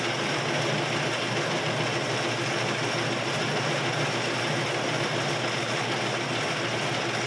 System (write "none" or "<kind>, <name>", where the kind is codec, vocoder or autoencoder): none